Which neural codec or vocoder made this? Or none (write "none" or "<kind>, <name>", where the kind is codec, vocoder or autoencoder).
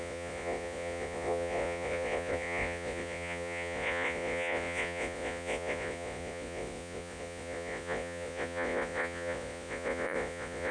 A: vocoder, Vocos